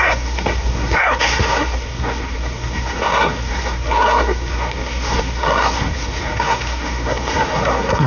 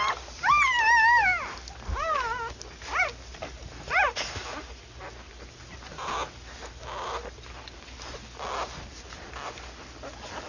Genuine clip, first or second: second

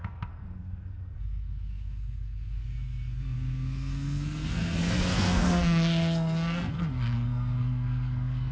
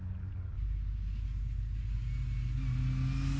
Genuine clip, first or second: second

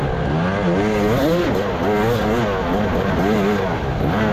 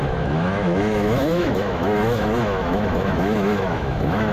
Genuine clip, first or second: first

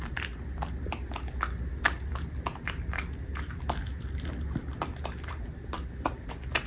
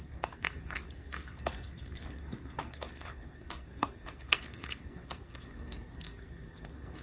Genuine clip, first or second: first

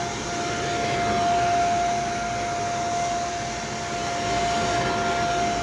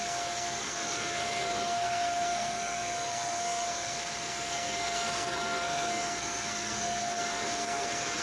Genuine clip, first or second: first